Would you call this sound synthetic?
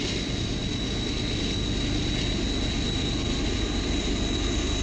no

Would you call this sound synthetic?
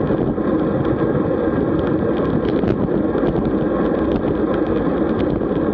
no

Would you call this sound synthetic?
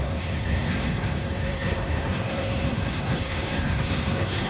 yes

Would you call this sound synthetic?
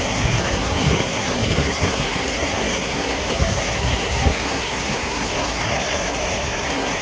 yes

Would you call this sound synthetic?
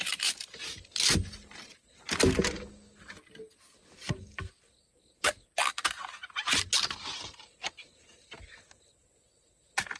no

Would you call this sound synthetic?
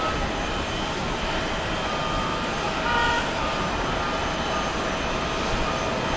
no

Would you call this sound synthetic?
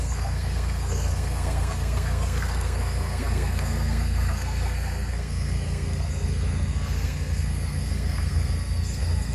yes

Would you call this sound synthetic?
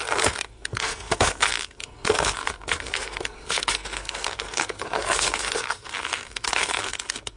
yes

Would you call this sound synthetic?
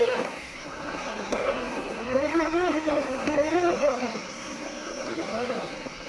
yes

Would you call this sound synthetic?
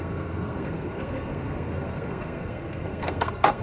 yes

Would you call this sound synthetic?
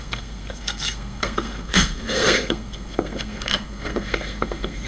yes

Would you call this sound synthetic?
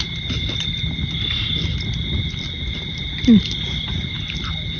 no